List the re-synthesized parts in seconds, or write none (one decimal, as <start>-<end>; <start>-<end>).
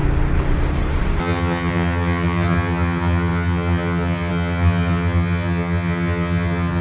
1.2-6.8